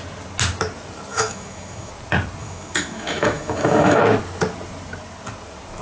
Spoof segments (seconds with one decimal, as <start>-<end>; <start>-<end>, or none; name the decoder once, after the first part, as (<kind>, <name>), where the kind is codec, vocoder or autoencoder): 1.1-1.9 (autoencoder, DAC-VAE); 2.4-4.0